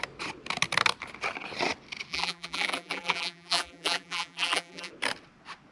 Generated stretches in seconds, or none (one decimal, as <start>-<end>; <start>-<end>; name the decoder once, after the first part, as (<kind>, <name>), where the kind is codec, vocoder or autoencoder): 2.1-4.9 (vocoder, BigVGAN v2)